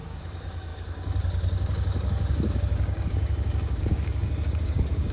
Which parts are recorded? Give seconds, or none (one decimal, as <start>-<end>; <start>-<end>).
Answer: none